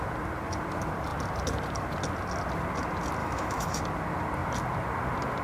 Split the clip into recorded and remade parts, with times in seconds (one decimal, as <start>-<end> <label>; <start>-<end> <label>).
0.0-3.2 recorded; 3.2-3.8 remade; 3.8-5.4 recorded